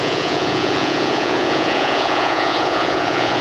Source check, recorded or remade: remade